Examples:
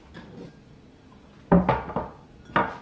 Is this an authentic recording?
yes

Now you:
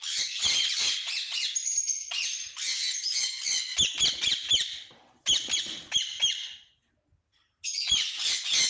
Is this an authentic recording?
yes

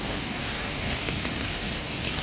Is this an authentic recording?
no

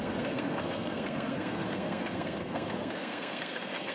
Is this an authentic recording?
no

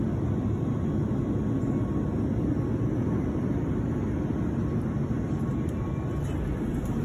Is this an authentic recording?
yes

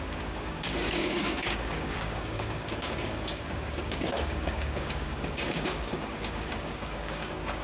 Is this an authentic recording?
no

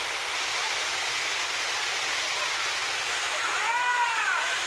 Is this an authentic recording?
yes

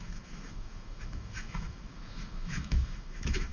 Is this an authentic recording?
no